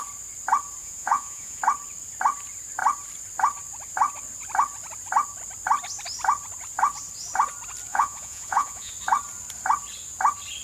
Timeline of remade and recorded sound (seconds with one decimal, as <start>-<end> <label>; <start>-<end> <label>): 0.0-0.8 recorded; 0.8-1.6 remade; 1.6-7.9 recorded; 7.9-8.9 remade; 8.9-10.6 recorded